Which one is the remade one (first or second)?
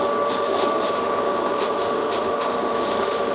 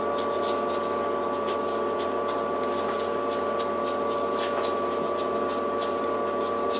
first